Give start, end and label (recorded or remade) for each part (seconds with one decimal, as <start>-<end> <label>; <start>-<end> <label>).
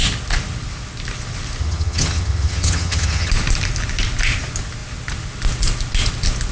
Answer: 0.0-1.6 recorded; 1.6-3.3 remade; 3.3-6.5 recorded